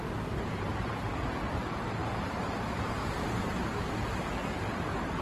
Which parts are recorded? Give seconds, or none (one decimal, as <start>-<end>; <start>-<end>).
none